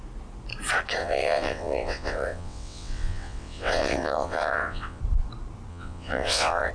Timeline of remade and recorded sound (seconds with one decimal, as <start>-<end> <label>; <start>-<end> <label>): 0.0-1.0 recorded; 1.0-5.0 remade; 5.0-5.7 recorded; 5.7-6.7 remade